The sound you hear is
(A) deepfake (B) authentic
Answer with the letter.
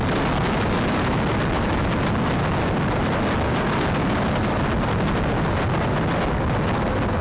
B